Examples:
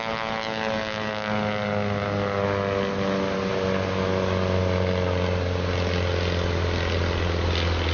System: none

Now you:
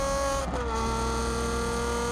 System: none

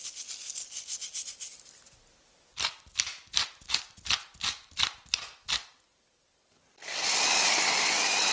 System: none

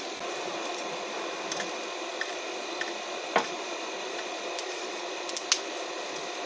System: none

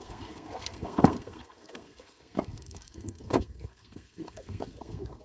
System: codec, SNAC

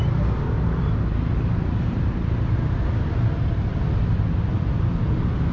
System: none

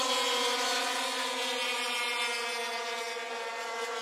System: none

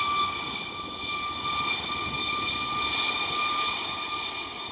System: none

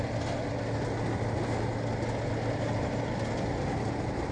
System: none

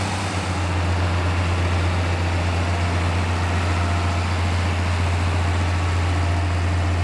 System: none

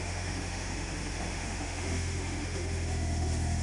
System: autoencoder, DAC-VAE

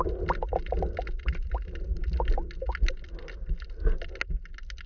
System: none